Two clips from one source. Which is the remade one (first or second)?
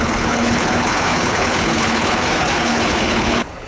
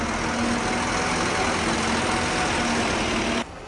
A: first